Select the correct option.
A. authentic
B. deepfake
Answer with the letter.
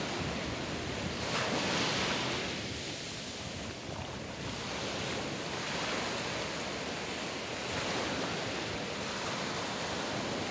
A